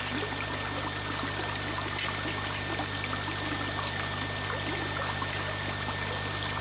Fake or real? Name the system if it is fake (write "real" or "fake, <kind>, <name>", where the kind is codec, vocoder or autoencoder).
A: real